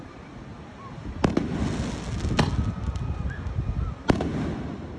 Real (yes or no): yes